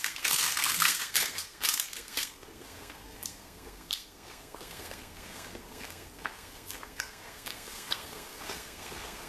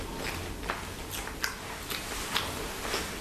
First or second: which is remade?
first